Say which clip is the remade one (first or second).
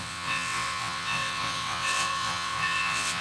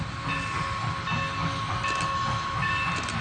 first